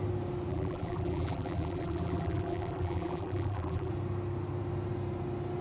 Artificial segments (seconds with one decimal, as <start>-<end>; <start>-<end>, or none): 0.5-3.9